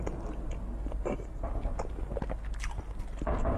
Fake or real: real